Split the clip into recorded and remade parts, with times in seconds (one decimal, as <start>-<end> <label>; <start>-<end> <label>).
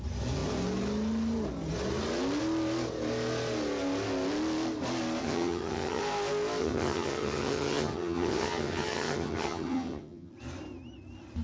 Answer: 0.0-5.2 recorded; 5.2-6.0 remade; 6.0-6.6 recorded; 6.6-10.3 remade; 10.3-11.4 recorded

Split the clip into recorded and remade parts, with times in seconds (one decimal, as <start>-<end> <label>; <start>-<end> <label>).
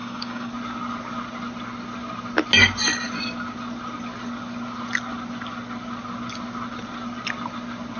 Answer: 0.0-0.5 remade; 0.5-8.0 recorded